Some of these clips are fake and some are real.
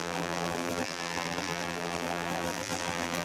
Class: fake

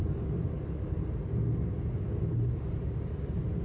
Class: real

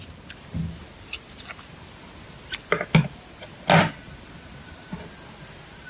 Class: real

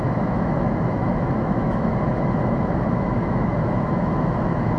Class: fake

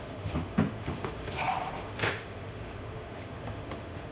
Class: fake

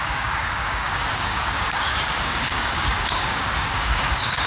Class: fake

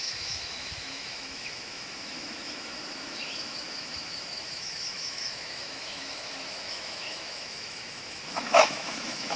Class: fake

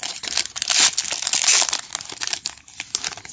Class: real